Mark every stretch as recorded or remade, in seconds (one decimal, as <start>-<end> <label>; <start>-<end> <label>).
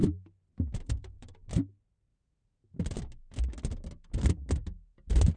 0.0-2.1 remade; 2.1-5.4 recorded